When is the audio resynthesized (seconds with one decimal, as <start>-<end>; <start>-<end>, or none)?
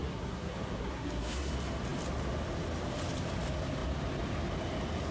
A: 0.0-1.5